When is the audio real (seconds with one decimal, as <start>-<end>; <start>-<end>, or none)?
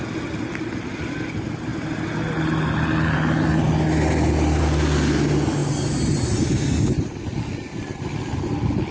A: 0.0-5.6; 6.9-8.9